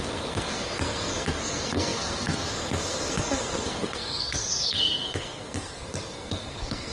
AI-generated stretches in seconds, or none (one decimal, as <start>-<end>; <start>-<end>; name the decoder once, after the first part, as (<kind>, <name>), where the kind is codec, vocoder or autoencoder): 0.0-6.9 (codec, SNAC)